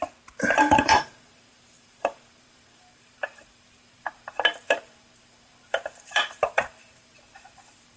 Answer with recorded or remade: remade